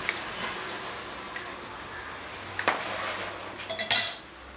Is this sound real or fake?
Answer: real